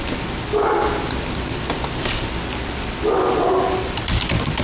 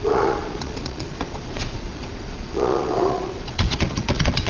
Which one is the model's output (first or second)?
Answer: second